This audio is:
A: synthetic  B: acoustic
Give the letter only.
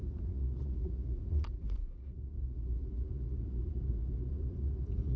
A